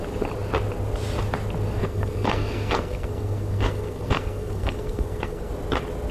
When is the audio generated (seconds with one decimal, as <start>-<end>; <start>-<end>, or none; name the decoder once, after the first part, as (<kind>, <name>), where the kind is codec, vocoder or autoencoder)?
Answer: 1.8-5.5 (codec, SNAC)